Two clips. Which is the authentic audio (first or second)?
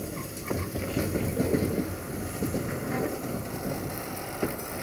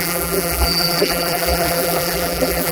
first